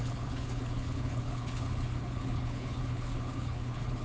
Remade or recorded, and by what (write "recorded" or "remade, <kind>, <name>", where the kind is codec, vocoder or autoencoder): remade, codec, HILCodec